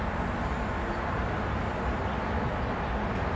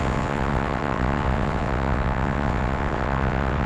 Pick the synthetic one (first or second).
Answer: second